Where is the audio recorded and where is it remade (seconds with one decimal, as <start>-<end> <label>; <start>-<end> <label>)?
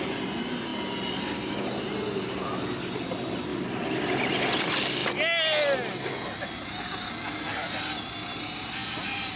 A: 0.0-3.5 recorded; 3.5-4.6 remade; 4.6-8.8 recorded; 8.8-9.4 remade